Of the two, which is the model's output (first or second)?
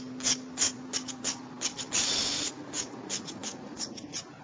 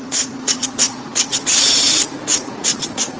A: second